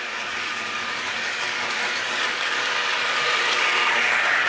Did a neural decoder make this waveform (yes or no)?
yes